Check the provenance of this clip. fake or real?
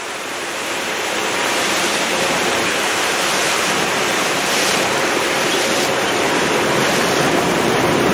fake